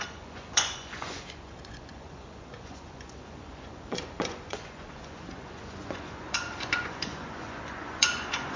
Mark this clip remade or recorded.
remade